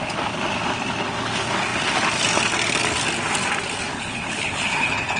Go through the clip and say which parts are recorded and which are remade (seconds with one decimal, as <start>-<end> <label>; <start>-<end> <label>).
0.0-3.9 recorded; 3.9-5.2 remade